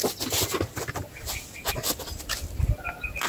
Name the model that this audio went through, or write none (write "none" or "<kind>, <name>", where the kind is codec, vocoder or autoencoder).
none